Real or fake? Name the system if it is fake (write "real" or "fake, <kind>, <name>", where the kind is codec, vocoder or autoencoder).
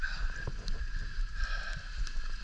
real